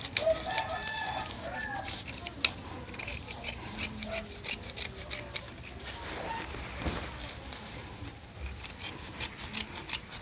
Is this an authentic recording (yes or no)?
yes